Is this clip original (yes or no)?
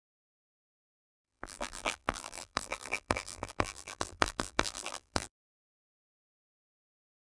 no